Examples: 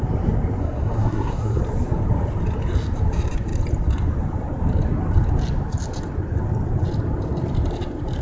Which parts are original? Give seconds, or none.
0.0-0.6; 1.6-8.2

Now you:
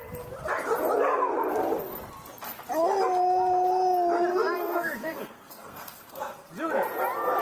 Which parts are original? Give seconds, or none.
0.0-4.3; 6.5-7.4

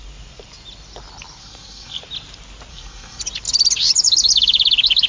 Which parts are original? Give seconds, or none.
0.0-1.4; 2.0-2.7; 3.2-5.1

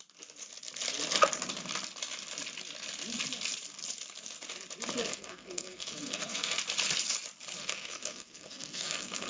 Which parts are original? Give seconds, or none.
0.0-5.1; 6.6-7.6

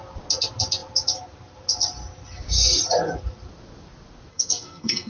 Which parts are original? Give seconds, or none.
0.0-4.3